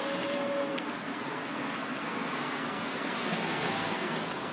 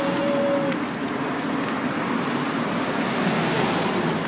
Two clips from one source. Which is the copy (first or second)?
first